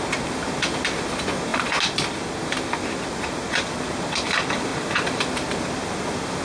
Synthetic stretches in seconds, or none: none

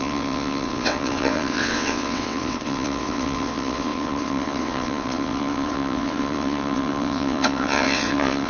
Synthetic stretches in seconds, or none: 0.0-8.5 (vocoder, WaveNeXt)

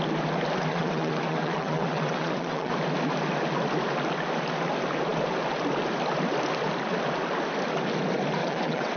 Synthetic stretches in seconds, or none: 0.7-2.7 (vocoder, WaveNeXt); 8.4-9.0

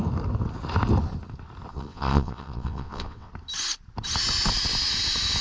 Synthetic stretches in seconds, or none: 1.7-3.3 (vocoder, WaveNeXt)

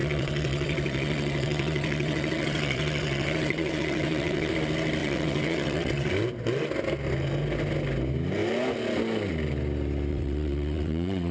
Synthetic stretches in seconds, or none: 0.0-4.5 (vocoder, WaveNeXt); 5.0-6.1; 10.1-11.3